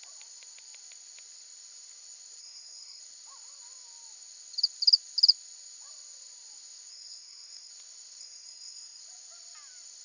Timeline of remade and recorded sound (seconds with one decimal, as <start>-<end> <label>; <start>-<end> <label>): 0.0-2.4 recorded; 2.4-3.0 remade; 3.0-6.9 recorded; 6.9-7.7 remade; 7.7-8.2 recorded; 8.2-9.0 remade; 9.0-10.0 recorded